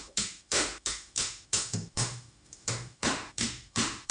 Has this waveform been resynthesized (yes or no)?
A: yes